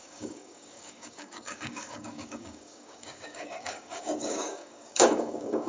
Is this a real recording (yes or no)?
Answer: no